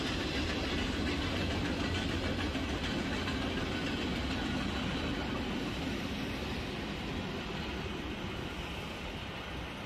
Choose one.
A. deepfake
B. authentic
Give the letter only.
B